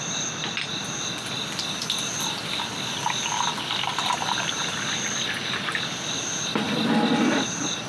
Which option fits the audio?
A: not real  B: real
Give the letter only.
B